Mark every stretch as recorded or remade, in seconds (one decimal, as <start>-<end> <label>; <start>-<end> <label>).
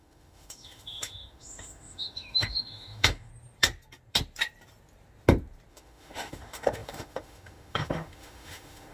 0.0-3.3 remade; 3.3-5.7 recorded; 5.7-8.9 remade